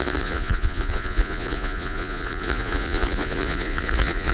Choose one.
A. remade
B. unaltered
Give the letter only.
A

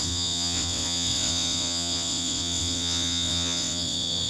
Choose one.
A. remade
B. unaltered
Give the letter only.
A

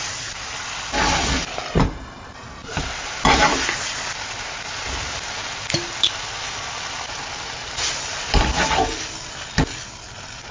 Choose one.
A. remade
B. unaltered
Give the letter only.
B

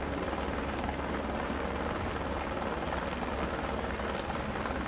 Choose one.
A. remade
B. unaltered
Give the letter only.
B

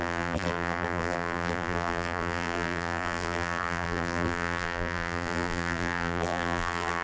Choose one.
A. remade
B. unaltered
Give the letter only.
A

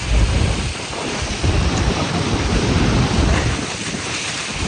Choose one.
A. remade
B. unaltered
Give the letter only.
A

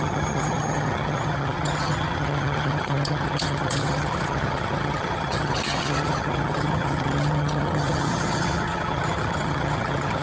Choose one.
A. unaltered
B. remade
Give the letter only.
B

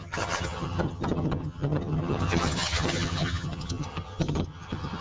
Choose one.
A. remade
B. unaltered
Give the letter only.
A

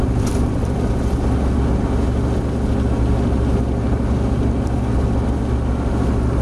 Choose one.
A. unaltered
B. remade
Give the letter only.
A